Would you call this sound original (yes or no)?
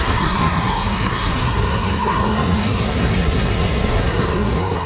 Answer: no